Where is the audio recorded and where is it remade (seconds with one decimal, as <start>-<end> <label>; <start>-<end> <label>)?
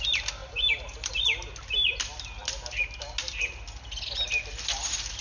0.0-0.4 recorded; 0.4-1.1 remade; 1.1-5.2 recorded